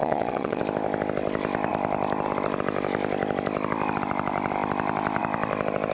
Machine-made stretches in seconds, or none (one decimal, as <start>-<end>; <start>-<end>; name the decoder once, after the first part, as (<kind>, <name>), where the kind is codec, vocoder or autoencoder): 0.0-0.6 (vocoder, WaveNeXt)

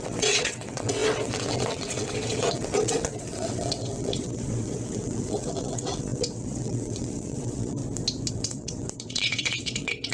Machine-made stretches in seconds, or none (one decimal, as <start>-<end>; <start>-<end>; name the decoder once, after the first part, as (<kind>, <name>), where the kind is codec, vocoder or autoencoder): 0.0-7.8 (vocoder, WaveNeXt); 8.3-10.1

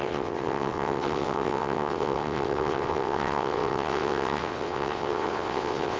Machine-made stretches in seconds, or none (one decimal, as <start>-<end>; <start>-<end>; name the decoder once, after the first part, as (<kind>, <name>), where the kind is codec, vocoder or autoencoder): 0.0-6.0 (vocoder, WaveNeXt)

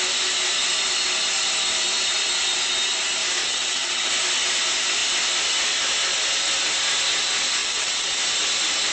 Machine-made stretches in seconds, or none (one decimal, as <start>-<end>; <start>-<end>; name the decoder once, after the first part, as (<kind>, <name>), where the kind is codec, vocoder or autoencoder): 3.4-4.1 (vocoder, WaveNeXt); 7.6-8.2

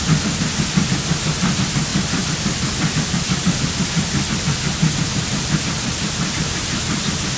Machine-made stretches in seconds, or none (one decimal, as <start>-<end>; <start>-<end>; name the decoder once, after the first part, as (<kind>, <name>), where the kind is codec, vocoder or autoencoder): none

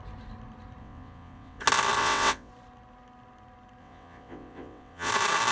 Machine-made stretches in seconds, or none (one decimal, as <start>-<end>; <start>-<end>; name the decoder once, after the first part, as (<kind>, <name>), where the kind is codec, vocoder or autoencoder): 0.8-1.6 (vocoder, WaveNeXt); 2.0-2.5; 3.8-5.1

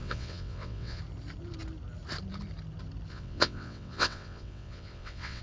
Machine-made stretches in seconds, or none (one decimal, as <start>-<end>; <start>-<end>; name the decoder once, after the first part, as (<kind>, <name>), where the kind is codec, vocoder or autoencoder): 0.0-1.0 (vocoder, WaveNeXt); 3.1-5.4

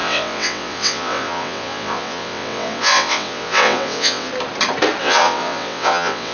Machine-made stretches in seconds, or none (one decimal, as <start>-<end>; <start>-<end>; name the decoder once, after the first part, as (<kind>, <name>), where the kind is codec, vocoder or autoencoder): 0.0-4.3 (vocoder, WaveNeXt); 5.0-6.3